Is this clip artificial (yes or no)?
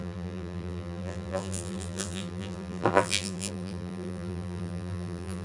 yes